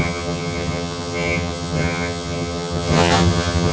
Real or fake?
fake